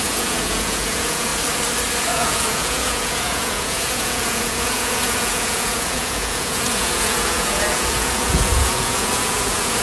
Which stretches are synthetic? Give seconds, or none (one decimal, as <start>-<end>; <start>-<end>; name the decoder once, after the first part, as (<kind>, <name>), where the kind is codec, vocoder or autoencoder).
0.0-1.3 (vocoder, Vocos); 2.1-9.8

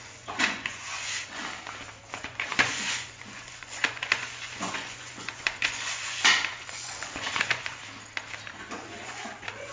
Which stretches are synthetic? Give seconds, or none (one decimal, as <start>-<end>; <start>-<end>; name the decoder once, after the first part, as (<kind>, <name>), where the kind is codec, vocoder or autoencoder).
0.0-1.4 (vocoder, Vocos); 2.0-7.8; 8.5-9.7

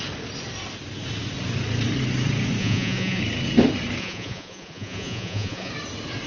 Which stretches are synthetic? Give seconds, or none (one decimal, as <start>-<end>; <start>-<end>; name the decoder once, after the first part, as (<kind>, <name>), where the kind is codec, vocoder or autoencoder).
2.6-3.2 (vocoder, Vocos); 4.0-5.7

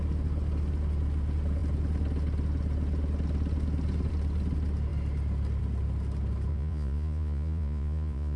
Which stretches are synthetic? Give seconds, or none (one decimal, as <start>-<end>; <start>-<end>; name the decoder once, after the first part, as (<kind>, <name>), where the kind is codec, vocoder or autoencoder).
6.5-8.4 (vocoder, Vocos)

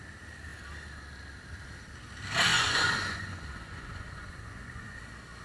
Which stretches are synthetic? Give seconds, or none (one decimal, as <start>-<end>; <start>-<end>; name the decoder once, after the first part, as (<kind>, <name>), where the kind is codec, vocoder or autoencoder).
2.5-5.0 (vocoder, Vocos)

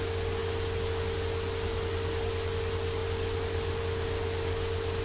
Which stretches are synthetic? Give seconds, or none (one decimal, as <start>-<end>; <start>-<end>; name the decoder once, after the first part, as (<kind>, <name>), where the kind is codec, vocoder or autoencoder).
none

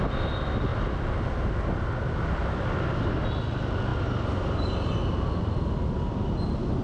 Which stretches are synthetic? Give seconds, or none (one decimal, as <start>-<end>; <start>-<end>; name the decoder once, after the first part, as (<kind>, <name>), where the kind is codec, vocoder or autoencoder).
none

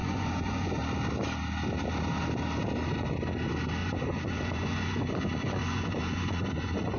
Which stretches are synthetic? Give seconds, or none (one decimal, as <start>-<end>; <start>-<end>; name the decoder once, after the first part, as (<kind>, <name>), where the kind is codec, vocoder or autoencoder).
0.0-0.8 (vocoder, Vocos); 3.8-7.0